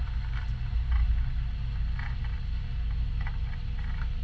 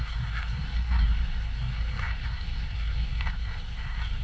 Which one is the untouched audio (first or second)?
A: first